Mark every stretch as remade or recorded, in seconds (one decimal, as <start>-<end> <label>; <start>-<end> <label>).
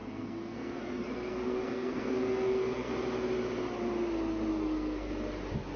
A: 0.0-2.9 remade; 2.9-4.5 recorded; 4.5-5.1 remade; 5.1-5.8 recorded